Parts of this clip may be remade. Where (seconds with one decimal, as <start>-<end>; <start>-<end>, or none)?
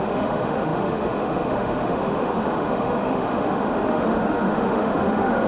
0.0-5.5